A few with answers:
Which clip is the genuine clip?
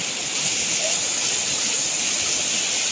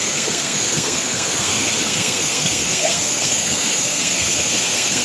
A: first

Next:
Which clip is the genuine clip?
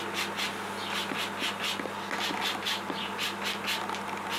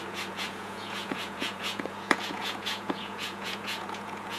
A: first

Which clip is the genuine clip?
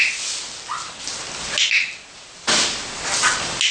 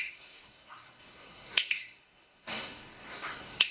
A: first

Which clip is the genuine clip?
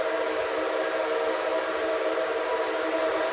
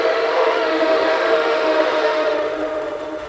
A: first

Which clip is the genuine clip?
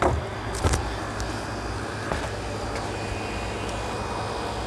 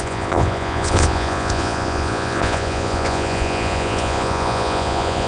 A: first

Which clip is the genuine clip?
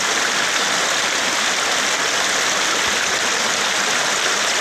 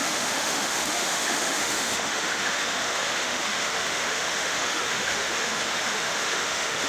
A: first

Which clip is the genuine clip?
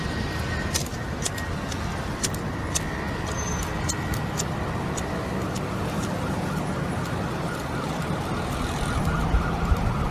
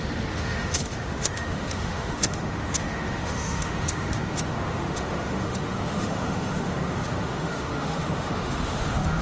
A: first